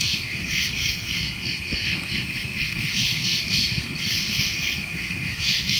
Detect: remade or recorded remade